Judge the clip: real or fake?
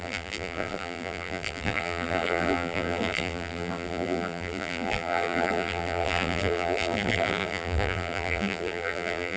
fake